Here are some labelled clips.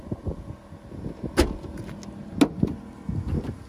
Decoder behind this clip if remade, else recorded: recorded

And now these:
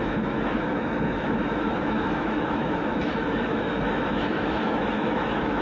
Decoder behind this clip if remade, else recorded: remade, autoencoder, DAC-VAE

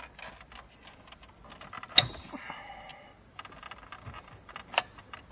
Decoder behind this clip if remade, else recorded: recorded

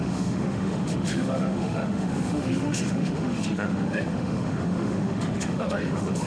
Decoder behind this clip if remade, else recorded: remade, autoencoder, DAC-VAE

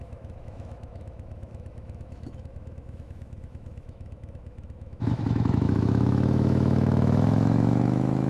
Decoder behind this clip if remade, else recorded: remade, autoencoder, DAC-VAE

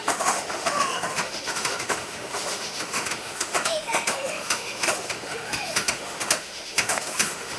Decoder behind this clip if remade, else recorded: remade, autoencoder, DAC-VAE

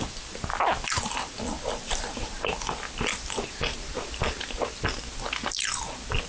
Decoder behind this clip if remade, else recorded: recorded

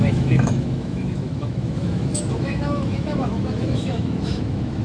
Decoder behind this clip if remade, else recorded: remade, autoencoder, DAC-VAE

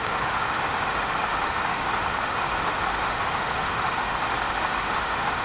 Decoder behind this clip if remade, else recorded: remade, autoencoder, DAC-VAE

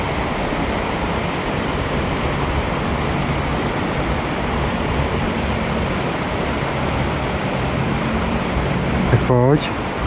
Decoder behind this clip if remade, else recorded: recorded